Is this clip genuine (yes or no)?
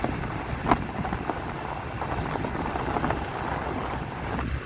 yes